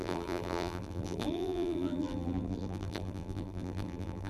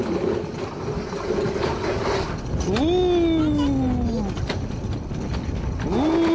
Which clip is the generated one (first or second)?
first